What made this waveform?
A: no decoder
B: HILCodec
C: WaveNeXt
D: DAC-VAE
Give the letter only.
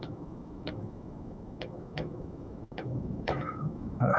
D